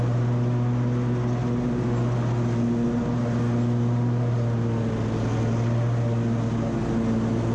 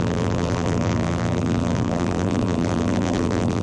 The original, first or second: first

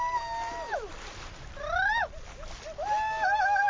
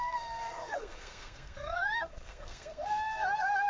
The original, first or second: first